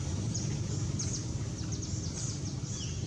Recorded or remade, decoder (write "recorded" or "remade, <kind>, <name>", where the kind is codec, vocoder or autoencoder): recorded